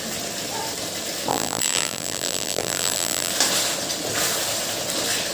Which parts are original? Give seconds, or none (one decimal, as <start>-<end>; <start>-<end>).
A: 0.0-1.3; 3.3-5.3